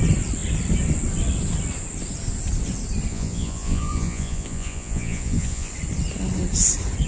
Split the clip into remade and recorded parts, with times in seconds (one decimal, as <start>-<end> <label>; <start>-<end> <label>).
0.0-3.1 recorded; 3.1-5.7 remade; 5.7-7.1 recorded